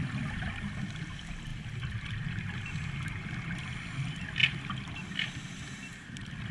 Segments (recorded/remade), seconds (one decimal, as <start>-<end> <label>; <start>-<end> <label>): 0.0-1.5 recorded; 1.5-2.3 remade; 2.3-6.5 recorded